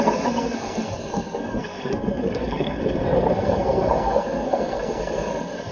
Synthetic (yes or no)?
yes